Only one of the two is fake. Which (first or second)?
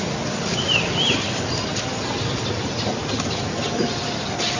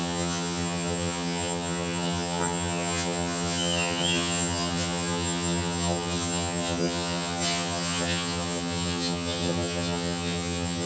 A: second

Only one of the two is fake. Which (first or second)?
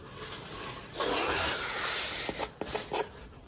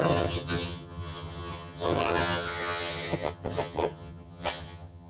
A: second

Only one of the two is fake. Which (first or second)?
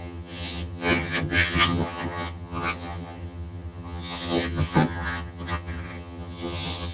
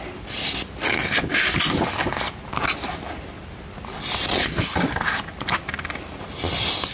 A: first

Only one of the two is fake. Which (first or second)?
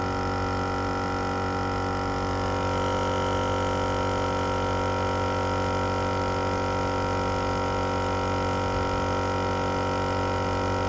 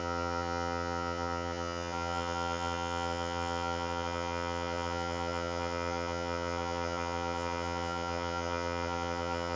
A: second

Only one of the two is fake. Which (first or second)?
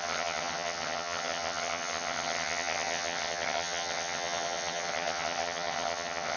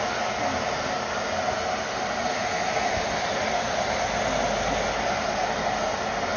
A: first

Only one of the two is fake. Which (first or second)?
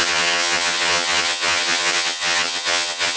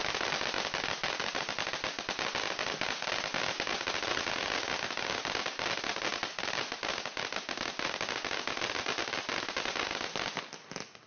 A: first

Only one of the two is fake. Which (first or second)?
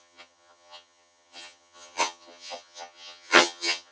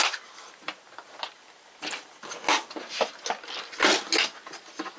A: first